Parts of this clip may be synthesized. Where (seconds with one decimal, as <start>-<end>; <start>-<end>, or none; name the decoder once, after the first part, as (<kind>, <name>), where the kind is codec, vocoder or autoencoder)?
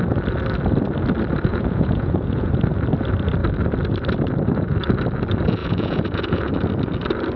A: 1.5-2.5 (vocoder, Vocos); 5.6-6.5